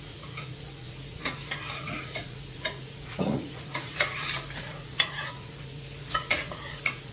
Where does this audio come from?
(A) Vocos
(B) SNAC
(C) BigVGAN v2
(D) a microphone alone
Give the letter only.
A